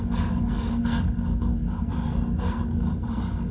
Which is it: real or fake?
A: fake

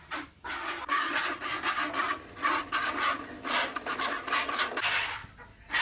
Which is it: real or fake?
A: real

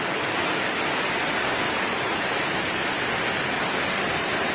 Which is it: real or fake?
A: real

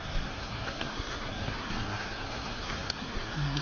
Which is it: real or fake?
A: fake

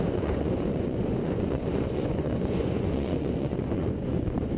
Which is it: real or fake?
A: fake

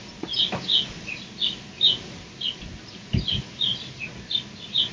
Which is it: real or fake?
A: real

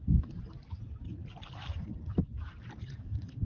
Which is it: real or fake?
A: real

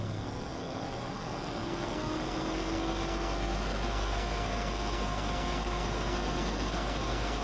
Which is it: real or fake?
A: fake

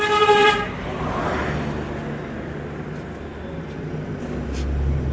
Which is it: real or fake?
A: real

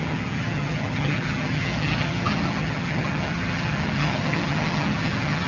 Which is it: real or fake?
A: fake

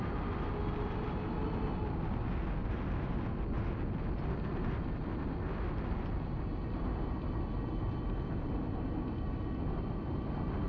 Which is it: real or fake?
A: real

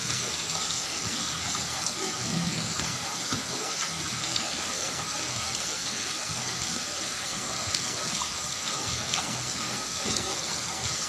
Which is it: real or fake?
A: fake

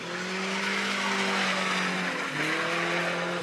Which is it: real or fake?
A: real